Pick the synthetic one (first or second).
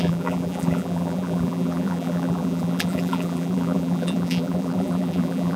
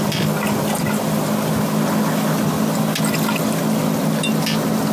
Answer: first